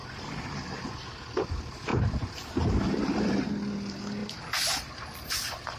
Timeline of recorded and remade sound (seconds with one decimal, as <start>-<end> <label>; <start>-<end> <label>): 0.0-5.8 recorded